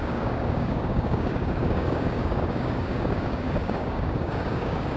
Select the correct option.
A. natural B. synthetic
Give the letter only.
B